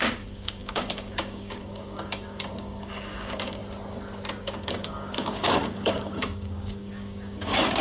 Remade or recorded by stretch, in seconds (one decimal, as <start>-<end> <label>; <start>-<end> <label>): 0.0-3.6 remade; 3.6-4.4 recorded; 4.4-7.8 remade